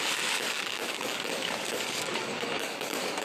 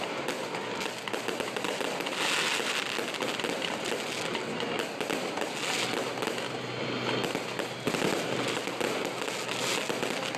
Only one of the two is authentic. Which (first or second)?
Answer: second